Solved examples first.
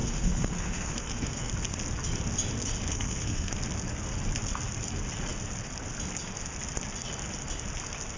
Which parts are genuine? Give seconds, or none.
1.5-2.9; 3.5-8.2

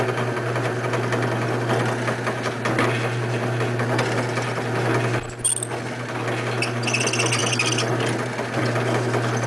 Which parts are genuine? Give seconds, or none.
0.0-9.5

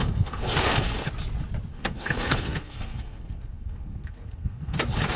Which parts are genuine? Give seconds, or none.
1.1-1.7; 4.8-5.2

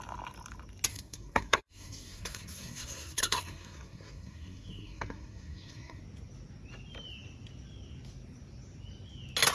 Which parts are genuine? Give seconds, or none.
0.0-0.9; 6.0-9.5

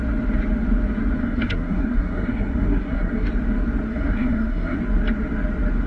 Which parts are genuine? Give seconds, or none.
0.0-1.2; 3.3-3.9; 4.8-5.9

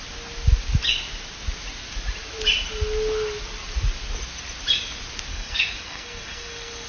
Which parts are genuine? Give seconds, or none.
0.0-5.3